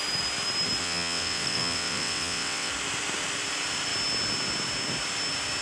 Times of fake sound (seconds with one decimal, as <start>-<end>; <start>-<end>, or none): 0.8-2.7